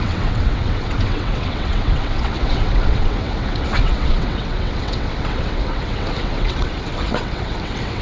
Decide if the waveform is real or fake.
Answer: fake